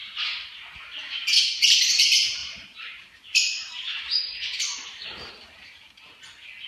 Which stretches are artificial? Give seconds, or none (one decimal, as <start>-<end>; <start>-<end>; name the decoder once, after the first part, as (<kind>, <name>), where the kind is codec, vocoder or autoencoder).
0.0-1.9 (vocoder, BigVGAN v2); 2.4-5.3